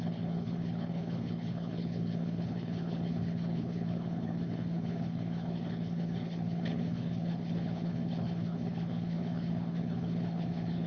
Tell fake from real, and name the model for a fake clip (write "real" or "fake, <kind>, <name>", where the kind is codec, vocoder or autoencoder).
fake, codec, HILCodec